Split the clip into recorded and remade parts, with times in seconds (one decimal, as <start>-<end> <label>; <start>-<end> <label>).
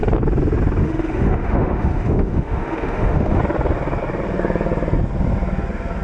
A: 0.0-0.8 recorded; 0.8-3.4 remade; 3.4-6.0 recorded